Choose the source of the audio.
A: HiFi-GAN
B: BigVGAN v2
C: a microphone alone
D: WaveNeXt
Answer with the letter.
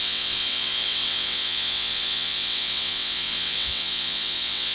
D